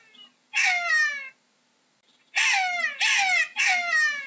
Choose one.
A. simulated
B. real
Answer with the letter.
B